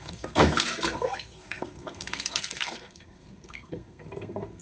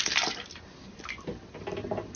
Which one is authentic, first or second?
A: second